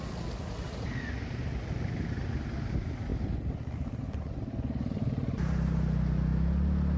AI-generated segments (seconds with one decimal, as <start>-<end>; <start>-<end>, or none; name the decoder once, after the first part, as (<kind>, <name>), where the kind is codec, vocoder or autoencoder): none